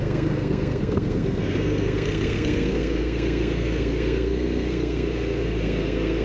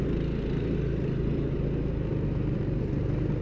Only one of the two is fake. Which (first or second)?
first